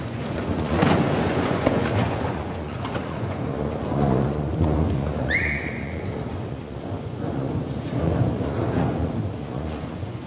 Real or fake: fake